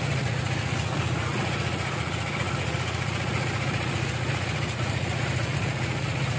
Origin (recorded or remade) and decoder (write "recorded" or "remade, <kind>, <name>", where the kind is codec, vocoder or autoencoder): remade, vocoder, Vocos